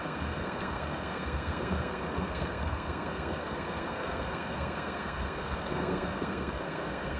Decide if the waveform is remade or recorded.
remade